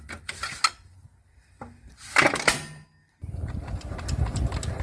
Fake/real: real